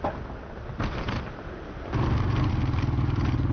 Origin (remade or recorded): recorded